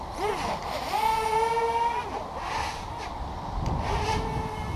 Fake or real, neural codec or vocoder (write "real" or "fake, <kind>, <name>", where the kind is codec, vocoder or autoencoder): real